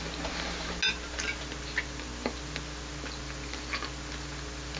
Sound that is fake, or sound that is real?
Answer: real